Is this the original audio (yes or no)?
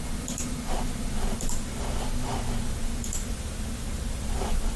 no